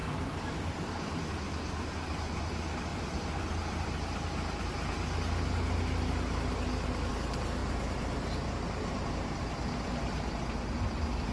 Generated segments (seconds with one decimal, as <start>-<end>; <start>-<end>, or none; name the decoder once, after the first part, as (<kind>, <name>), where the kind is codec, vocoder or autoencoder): 0.0-1.2 (vocoder, BigVGAN v2)